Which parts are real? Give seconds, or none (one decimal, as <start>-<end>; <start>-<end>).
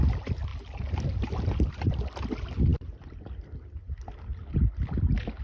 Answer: 0.0-5.4